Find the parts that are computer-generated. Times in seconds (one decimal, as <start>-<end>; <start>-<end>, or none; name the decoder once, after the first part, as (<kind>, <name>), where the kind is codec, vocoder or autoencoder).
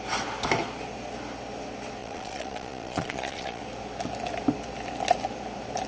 2.0-3.6 (vocoder, Vocos)